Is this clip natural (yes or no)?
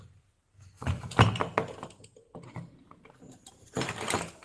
yes